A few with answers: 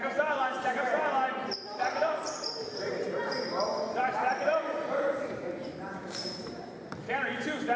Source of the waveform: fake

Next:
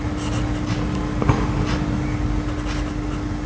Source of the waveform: real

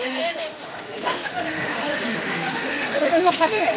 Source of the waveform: fake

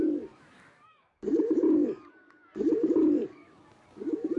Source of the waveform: fake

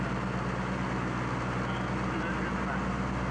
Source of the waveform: real